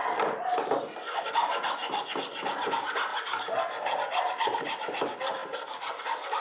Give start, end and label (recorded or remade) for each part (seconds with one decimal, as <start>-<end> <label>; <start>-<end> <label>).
0.0-1.8 remade; 1.8-5.0 recorded; 5.0-5.4 remade; 5.4-6.0 recorded; 6.0-6.4 remade